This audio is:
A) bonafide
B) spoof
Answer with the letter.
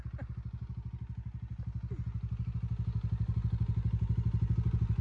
A